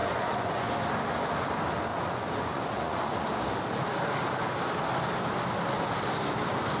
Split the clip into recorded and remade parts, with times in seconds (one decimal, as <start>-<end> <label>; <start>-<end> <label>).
0.0-0.7 remade; 0.7-1.9 recorded; 1.9-3.4 remade; 3.4-6.8 recorded